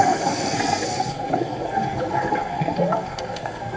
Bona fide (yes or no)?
no